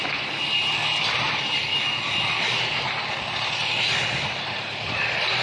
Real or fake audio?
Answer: fake